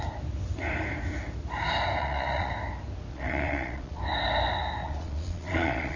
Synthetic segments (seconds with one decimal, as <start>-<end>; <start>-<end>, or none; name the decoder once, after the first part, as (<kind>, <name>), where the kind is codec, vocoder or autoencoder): 2.0-2.5 (vocoder, Vocos); 3.1-4.0; 4.8-6.0